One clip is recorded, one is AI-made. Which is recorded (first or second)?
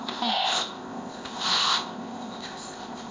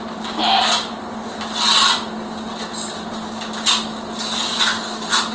second